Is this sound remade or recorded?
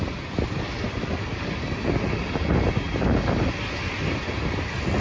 recorded